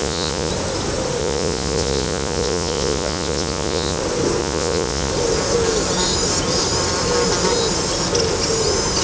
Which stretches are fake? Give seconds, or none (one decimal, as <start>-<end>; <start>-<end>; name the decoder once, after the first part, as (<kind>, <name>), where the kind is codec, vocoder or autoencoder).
0.0-0.5 (vocoder, Vocos); 1.2-4.0; 4.4-5.1